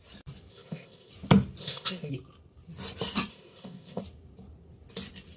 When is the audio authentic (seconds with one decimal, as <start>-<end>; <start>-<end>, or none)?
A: 0.0-0.5; 1.1-1.6; 2.1-3.3; 4.0-5.4